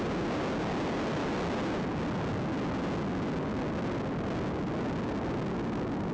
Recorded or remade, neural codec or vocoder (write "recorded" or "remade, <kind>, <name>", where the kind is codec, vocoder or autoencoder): recorded